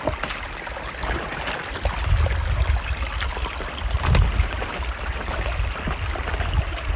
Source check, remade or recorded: recorded